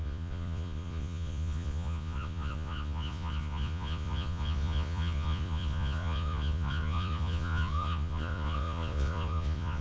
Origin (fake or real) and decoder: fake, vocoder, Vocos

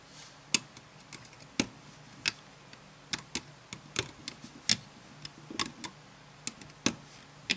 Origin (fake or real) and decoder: real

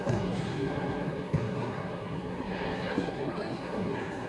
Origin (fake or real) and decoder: fake, codec, SNAC